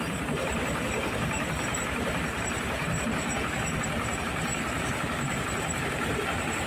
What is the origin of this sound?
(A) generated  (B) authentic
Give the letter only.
A